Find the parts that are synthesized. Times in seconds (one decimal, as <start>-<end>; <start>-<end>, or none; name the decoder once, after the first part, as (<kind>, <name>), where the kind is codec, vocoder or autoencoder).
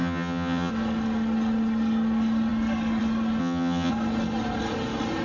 0.0-0.7 (vocoder, HiFi-GAN); 3.4-3.9